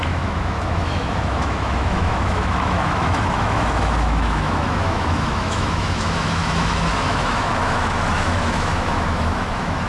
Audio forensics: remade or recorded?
remade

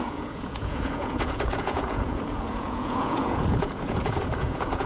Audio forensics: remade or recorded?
remade